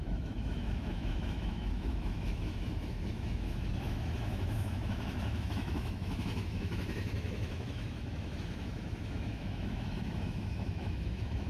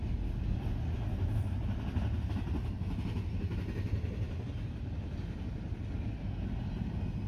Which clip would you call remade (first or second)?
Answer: first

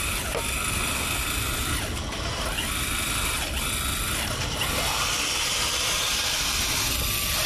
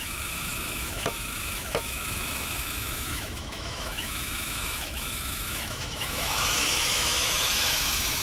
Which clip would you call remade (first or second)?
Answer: second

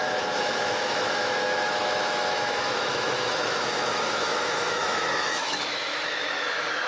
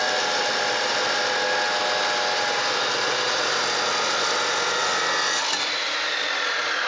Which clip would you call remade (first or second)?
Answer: first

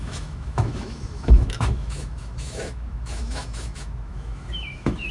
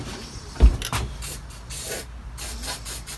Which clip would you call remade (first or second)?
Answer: first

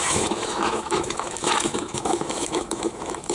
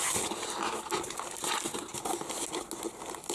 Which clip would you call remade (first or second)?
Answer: first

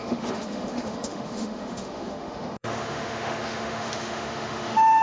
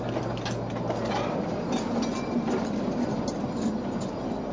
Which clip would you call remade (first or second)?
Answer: first